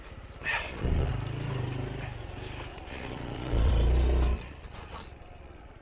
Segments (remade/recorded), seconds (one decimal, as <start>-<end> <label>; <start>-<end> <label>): 0.0-0.5 recorded; 0.5-1.1 remade; 1.1-2.7 recorded; 2.7-3.7 remade; 3.7-4.3 recorded; 4.3-5.8 remade